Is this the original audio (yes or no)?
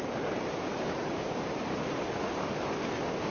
yes